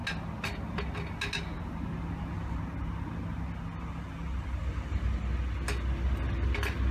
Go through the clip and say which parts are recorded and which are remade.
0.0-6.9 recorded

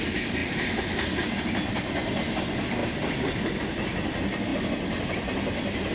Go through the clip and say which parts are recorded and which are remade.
0.0-5.9 recorded